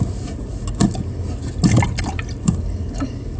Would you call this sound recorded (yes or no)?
yes